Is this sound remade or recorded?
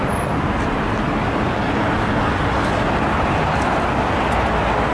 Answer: recorded